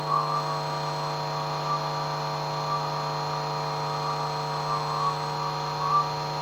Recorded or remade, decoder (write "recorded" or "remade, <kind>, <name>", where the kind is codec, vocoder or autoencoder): recorded